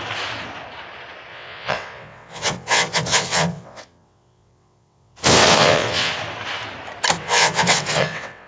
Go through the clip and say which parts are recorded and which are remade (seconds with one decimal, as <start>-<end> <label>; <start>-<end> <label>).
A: 0.0-1.3 recorded; 1.3-6.1 remade; 6.1-7.2 recorded; 7.2-8.5 remade